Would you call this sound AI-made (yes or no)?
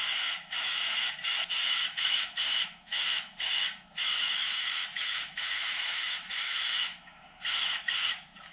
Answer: yes